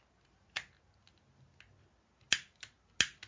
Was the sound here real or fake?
real